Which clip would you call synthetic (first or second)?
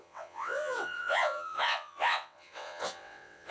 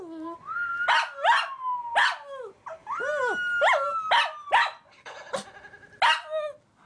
first